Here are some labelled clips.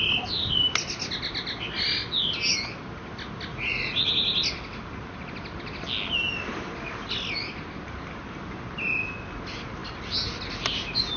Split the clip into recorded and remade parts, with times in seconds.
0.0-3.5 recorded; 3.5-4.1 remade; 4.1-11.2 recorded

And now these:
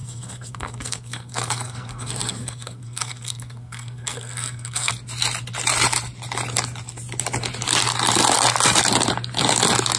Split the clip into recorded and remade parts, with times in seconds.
0.0-4.9 remade; 4.9-10.0 recorded

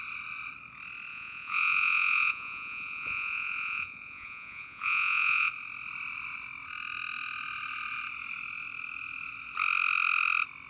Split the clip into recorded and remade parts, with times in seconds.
0.0-1.1 recorded; 1.1-5.5 remade; 5.5-10.7 recorded

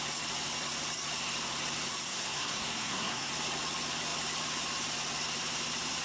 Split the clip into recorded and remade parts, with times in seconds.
0.0-2.1 recorded; 2.1-3.3 remade; 3.3-6.0 recorded

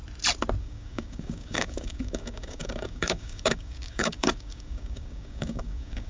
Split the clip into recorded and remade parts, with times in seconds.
0.0-0.6 recorded; 0.6-6.1 remade

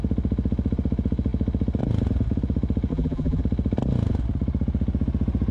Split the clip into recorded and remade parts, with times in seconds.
0.0-2.9 recorded; 2.9-3.4 remade; 3.4-5.5 recorded